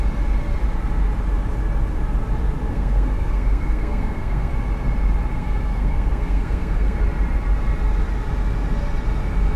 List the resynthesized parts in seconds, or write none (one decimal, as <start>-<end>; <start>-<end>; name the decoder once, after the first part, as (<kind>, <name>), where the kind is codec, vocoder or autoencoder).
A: 2.7-4.5 (codec, SNAC); 5.3-7.0